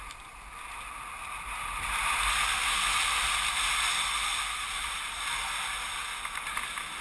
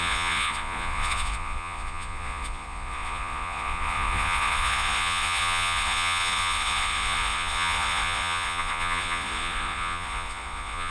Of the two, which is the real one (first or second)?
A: first